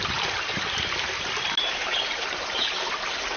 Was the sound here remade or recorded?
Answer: recorded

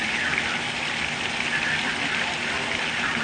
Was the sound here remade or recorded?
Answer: remade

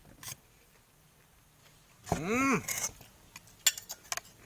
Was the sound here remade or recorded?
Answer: recorded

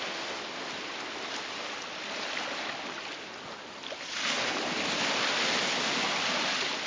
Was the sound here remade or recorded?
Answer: recorded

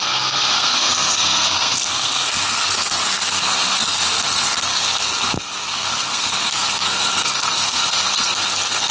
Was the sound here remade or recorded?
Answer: remade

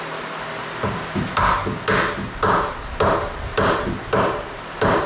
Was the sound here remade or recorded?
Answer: recorded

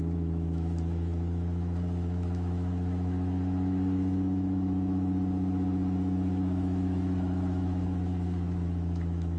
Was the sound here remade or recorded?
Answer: remade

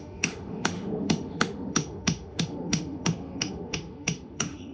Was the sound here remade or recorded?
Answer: remade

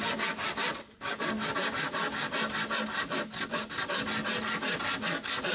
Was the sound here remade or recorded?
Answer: recorded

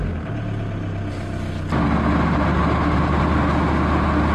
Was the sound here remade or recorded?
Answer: recorded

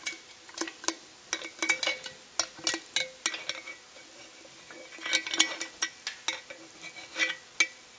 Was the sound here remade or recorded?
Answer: recorded